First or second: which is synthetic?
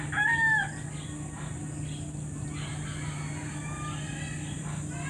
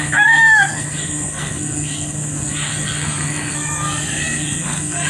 second